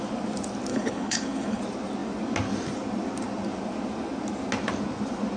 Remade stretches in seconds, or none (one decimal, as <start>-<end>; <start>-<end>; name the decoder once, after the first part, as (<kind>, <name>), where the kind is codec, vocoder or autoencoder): 0.7-1.6 (codec, HILCodec)